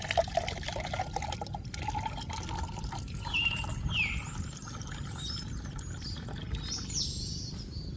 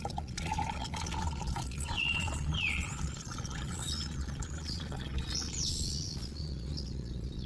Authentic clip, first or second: first